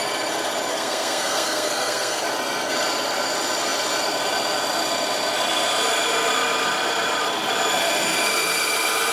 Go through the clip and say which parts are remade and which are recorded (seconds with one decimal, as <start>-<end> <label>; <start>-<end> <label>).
0.0-0.7 recorded; 0.7-2.2 remade; 2.2-9.1 recorded